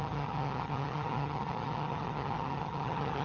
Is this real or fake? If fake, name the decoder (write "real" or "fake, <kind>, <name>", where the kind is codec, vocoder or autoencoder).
fake, vocoder, HiFi-GAN